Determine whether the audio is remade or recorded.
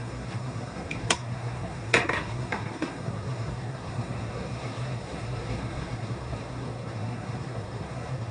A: remade